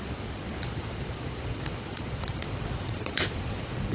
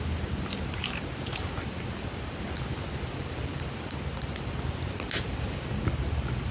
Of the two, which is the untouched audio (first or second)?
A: second